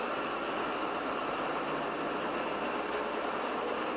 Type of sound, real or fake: real